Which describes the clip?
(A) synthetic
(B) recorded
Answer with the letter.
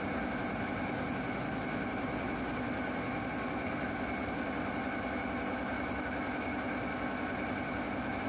B